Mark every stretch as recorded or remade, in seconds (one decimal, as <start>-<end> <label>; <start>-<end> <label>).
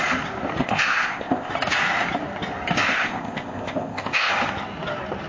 0.0-0.6 recorded; 0.6-1.5 remade; 1.5-2.9 recorded; 2.9-4.3 remade; 4.3-5.3 recorded